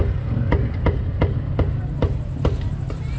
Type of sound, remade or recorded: recorded